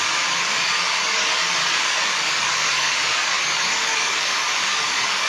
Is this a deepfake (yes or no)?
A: yes